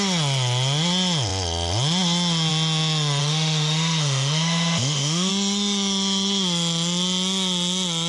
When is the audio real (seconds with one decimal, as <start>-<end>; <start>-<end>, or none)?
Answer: 0.0-3.2; 5.3-8.1